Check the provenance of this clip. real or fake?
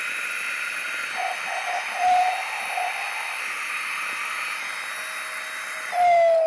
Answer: real